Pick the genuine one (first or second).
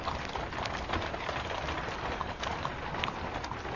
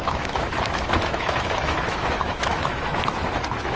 first